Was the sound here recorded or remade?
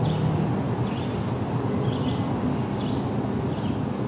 recorded